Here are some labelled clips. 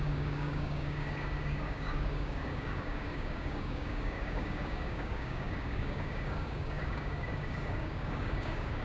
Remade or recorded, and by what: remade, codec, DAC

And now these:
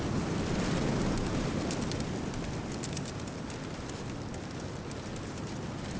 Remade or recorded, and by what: recorded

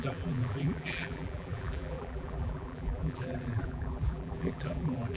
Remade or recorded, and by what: remade, vocoder, BigVGAN v2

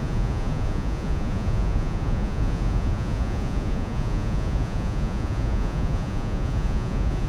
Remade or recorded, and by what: remade, vocoder, Vocos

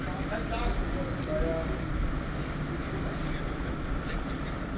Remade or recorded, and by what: recorded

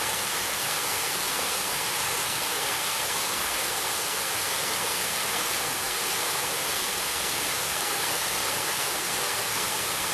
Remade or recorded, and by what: remade, codec, SNAC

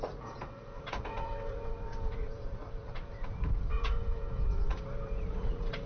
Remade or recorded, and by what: remade, vocoder, Vocos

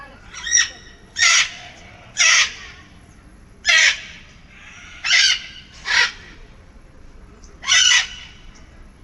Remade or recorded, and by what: remade, vocoder, Vocos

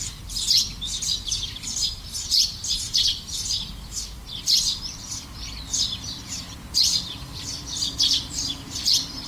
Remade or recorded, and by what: remade, vocoder, BigVGAN v2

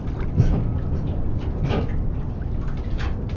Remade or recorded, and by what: recorded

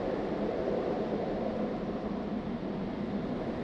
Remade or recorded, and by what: recorded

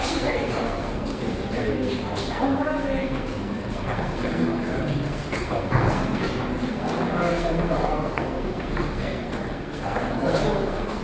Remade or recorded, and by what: remade, codec, SNAC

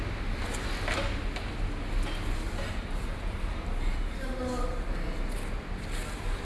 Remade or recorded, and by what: recorded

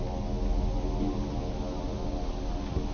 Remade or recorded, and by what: recorded